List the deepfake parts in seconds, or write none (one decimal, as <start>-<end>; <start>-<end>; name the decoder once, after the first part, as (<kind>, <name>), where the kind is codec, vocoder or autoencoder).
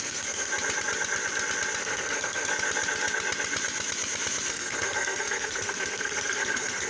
0.0-0.5 (codec, SNAC); 1.8-2.5; 4.5-6.9